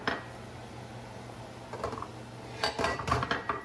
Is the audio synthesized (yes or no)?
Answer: no